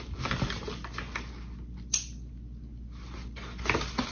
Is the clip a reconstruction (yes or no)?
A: no